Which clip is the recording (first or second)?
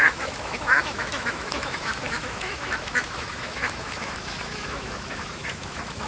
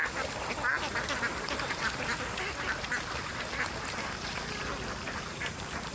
second